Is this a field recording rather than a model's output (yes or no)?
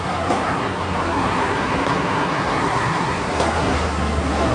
no